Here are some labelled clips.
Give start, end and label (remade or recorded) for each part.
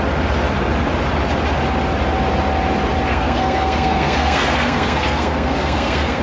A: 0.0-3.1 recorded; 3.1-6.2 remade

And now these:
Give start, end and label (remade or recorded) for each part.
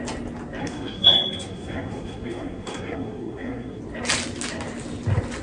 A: 0.0-0.6 recorded; 0.6-3.8 remade; 3.8-5.4 recorded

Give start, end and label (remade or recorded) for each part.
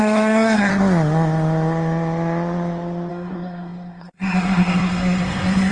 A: 0.0-0.7 remade; 0.7-3.1 recorded; 3.1-5.7 remade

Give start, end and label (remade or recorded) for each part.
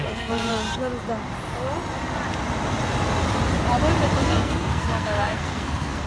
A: 0.0-0.5 remade; 0.5-4.2 recorded; 4.2-6.1 remade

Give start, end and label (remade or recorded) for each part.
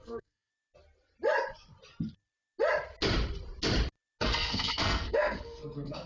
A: 0.0-0.5 remade; 0.5-4.2 recorded; 4.2-6.1 remade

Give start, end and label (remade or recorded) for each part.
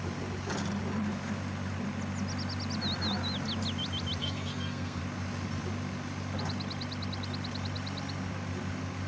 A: 0.0-4.2 recorded; 4.2-5.0 remade; 5.0-9.1 recorded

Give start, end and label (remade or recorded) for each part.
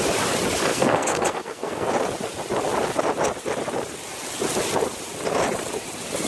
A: 0.0-0.7 recorded; 0.7-1.9 remade; 1.9-6.3 recorded